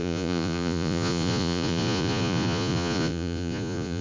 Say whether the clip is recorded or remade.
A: remade